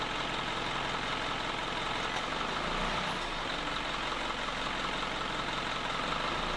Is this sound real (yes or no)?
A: yes